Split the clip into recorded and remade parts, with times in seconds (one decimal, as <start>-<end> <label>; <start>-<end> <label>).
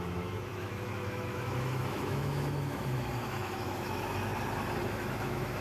0.0-4.3 remade; 4.3-4.8 recorded; 4.8-5.6 remade